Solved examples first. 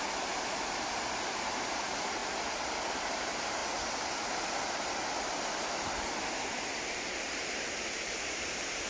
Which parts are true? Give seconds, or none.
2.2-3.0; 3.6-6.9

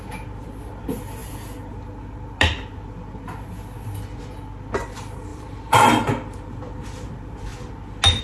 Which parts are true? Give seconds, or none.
0.0-5.3; 6.6-8.2

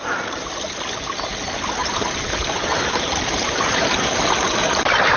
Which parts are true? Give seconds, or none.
0.0-1.8